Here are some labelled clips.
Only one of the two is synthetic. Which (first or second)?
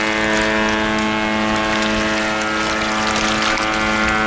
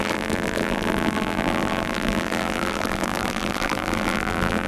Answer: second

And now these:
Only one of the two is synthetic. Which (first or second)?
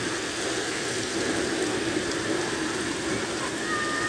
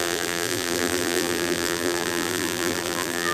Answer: second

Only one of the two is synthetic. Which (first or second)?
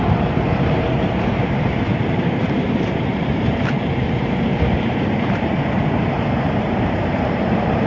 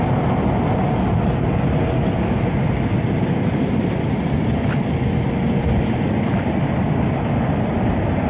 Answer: first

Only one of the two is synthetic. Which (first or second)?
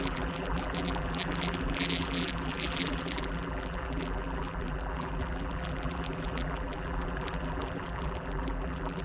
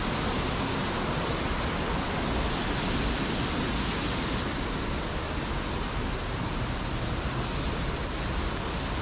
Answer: first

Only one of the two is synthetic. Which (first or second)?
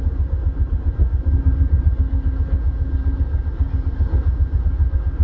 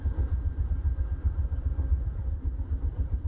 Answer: second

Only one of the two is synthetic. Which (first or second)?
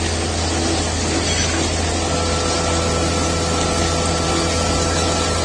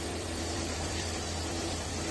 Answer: second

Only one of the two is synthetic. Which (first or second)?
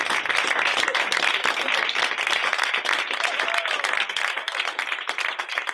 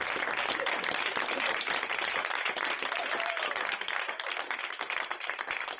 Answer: second